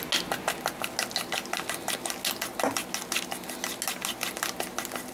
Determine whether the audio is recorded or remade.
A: recorded